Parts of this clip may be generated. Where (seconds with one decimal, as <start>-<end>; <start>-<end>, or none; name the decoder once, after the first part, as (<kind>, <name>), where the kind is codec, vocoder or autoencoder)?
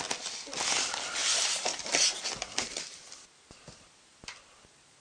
1.2-4.2 (vocoder, BigVGAN v2)